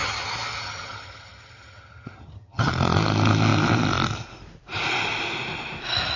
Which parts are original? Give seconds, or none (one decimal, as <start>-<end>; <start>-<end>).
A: 2.7-6.2